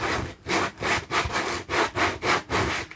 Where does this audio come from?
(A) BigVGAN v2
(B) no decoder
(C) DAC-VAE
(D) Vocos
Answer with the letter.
B